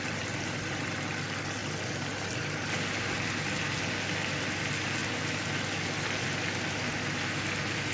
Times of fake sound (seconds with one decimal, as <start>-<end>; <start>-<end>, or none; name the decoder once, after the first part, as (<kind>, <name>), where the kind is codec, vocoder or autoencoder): none